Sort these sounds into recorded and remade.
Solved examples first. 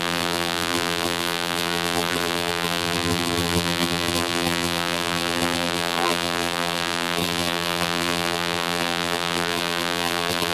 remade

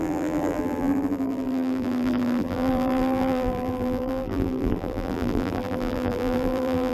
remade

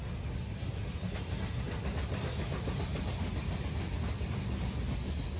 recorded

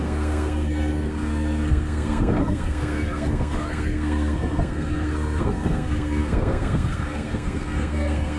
remade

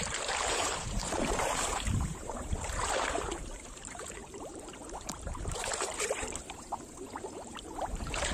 remade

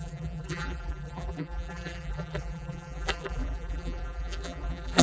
remade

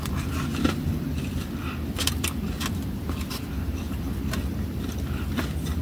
remade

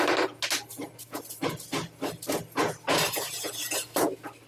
recorded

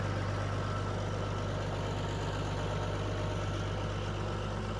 recorded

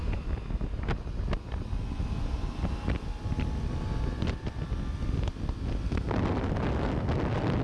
recorded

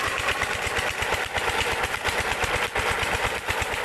recorded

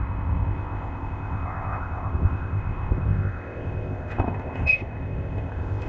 remade